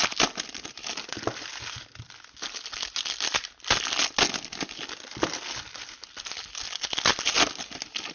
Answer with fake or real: real